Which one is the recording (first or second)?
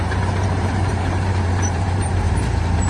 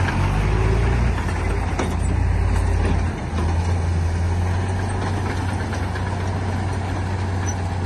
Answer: second